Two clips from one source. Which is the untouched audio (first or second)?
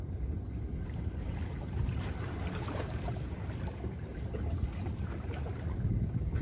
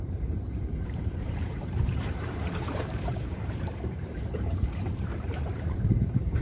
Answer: first